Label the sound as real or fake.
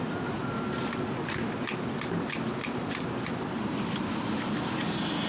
real